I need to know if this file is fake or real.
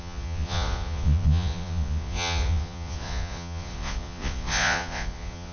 fake